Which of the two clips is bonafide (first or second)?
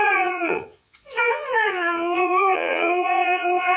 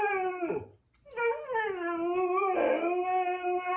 second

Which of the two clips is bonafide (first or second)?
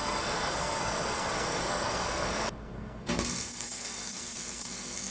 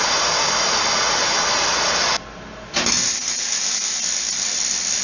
second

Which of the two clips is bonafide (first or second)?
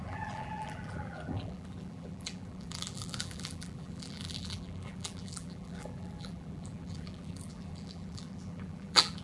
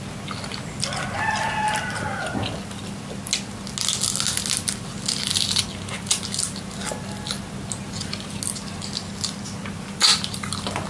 second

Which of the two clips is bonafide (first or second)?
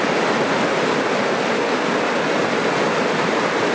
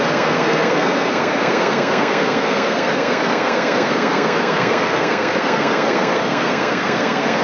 first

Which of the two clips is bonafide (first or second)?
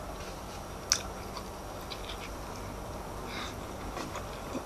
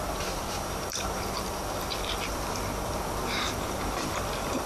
first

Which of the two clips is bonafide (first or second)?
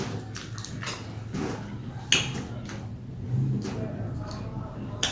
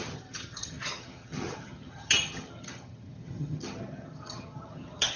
first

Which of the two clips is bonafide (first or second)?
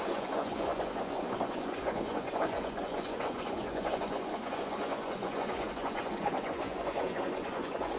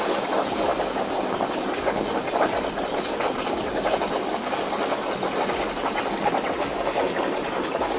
second